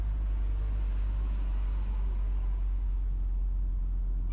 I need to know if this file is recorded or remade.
recorded